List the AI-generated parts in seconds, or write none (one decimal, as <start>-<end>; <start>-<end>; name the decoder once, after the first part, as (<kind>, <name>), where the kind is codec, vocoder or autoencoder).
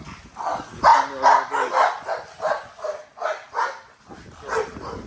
none